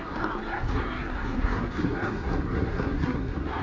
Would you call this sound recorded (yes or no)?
no